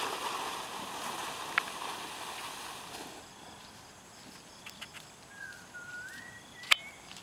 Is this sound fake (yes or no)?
no